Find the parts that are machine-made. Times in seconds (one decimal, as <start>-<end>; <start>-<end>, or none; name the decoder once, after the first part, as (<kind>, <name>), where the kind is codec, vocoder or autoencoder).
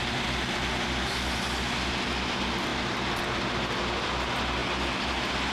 none